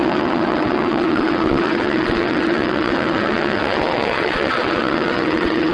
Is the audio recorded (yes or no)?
no